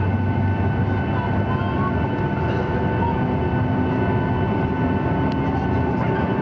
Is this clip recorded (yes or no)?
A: yes